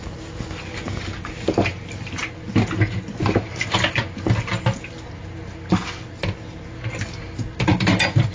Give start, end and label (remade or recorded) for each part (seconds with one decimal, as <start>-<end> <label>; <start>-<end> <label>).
0.0-8.3 recorded